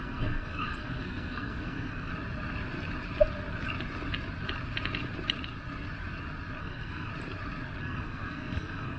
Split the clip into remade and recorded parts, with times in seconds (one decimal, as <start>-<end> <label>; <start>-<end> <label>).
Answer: 0.0-2.1 remade; 2.1-6.6 recorded; 6.6-7.1 remade; 7.1-7.8 recorded; 7.8-9.0 remade